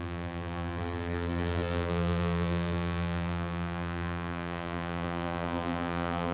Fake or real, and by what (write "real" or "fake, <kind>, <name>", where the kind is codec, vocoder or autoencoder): fake, vocoder, BigVGAN v2